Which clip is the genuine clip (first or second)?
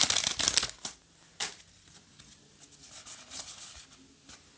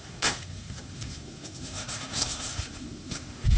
first